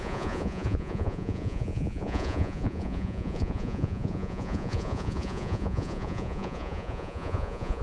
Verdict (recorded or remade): remade